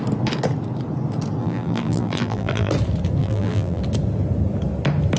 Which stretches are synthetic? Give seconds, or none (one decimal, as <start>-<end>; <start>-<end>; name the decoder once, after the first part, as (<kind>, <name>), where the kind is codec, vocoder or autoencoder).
1.4-2.7 (vocoder, BigVGAN v2); 3.2-3.8